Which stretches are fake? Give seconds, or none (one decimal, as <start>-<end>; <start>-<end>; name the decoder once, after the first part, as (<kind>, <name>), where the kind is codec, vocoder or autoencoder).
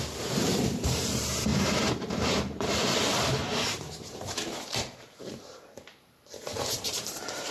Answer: 0.0-7.5 (vocoder, BigVGAN v2)